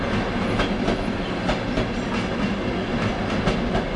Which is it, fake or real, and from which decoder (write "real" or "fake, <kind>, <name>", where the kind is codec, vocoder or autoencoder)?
real